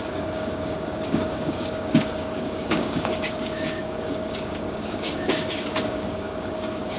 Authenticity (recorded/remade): remade